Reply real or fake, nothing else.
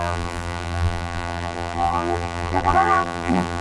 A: fake